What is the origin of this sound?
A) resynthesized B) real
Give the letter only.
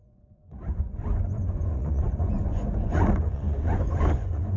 A